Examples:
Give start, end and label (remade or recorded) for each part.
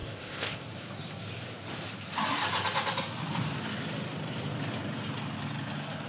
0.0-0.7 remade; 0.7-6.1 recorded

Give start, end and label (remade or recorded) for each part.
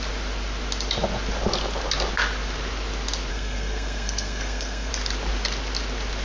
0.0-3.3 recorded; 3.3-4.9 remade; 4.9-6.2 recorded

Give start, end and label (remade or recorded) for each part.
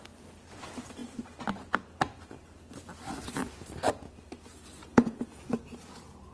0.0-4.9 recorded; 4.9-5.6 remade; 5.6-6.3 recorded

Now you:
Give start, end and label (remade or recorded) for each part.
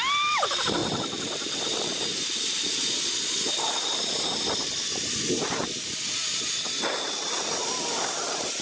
0.0-0.8 remade; 0.8-3.2 recorded; 3.2-6.2 remade; 6.2-7.6 recorded; 7.6-8.6 remade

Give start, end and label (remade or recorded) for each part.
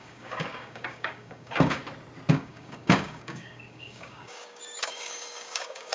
0.0-1.8 remade; 1.8-2.3 recorded; 2.3-5.9 remade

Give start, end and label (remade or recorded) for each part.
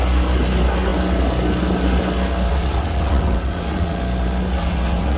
0.0-2.5 recorded; 2.5-4.0 remade; 4.0-4.6 recorded; 4.6-5.2 remade